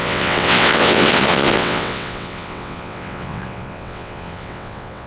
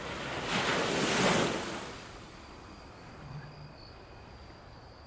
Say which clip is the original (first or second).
second